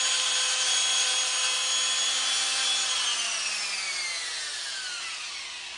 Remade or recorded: recorded